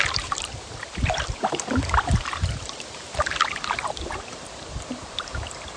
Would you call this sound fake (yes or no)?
yes